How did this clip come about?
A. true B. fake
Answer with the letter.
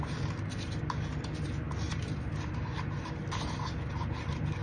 A